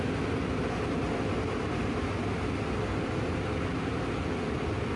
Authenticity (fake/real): real